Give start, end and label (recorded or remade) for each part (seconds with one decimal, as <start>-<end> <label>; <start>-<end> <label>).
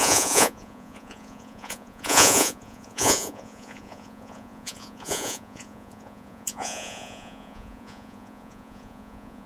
0.0-9.5 remade